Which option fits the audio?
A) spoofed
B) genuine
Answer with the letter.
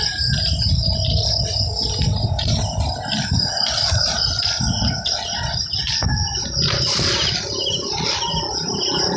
B